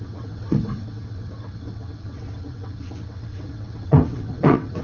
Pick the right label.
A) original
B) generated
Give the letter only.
B